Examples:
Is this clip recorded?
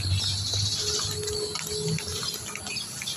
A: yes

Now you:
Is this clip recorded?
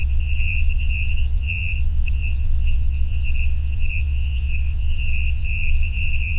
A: no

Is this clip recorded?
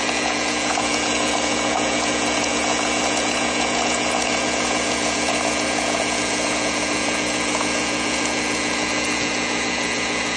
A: no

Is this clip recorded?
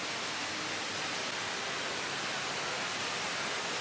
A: yes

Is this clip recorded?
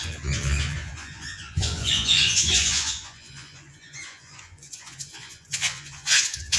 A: no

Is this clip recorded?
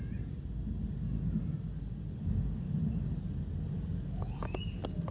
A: yes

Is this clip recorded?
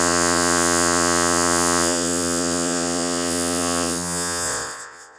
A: no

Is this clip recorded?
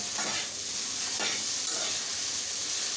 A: yes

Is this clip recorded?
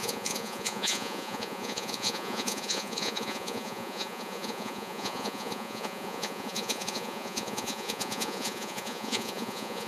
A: no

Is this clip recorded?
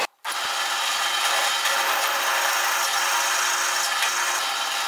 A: yes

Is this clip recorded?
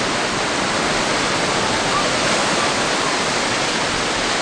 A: yes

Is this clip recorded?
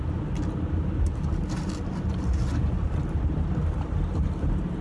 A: yes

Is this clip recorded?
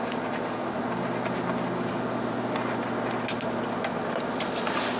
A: yes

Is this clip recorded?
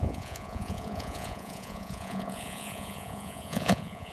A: no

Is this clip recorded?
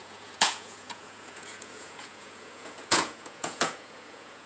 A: no